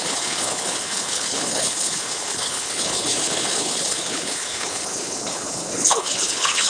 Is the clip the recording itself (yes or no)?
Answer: no